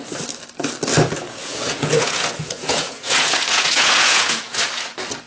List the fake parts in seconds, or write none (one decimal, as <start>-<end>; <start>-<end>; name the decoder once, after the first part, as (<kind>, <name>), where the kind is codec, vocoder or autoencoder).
1.4-4.6 (vocoder, Vocos)